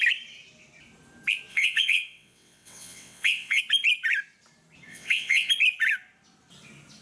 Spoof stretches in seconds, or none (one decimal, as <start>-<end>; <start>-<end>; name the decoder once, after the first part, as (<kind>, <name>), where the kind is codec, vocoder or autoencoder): 1.5-3.6 (vocoder, WaveNeXt); 4.9-5.5